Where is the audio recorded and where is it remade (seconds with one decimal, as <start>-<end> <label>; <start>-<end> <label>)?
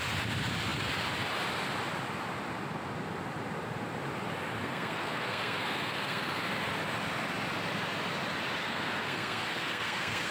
0.0-4.6 recorded; 4.6-6.4 remade; 6.4-8.6 recorded; 8.6-10.3 remade